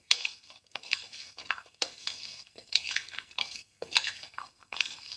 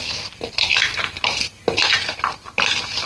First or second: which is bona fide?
second